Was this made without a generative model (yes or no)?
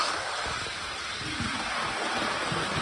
yes